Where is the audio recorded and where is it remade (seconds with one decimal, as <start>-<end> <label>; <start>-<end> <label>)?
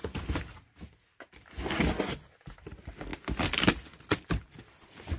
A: 0.0-5.2 recorded